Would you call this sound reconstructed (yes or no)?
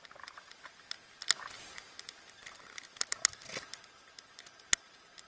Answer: no